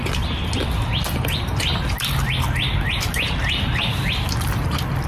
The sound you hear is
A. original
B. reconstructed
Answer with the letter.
A